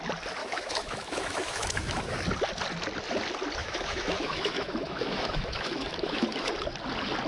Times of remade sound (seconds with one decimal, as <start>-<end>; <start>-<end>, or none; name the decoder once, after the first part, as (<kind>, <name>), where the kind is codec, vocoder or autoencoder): 0.4-2.2 (autoencoder, DAC-VAE); 3.6-6.5